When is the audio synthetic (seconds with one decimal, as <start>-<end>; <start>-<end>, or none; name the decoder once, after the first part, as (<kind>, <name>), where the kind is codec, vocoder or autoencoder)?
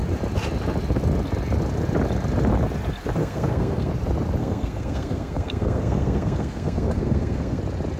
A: 3.2-3.9 (codec, SNAC); 4.4-7.6